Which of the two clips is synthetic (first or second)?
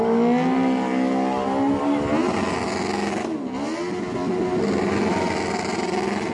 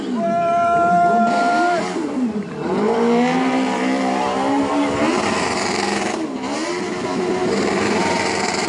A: second